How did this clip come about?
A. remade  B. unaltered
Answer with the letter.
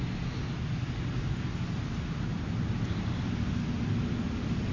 B